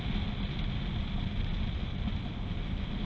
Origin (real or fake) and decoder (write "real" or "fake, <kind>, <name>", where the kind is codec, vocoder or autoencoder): real